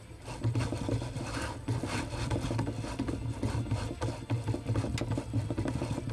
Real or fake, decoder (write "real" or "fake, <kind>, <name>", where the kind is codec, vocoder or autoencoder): real